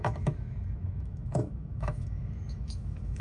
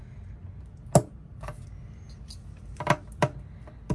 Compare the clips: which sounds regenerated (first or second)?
first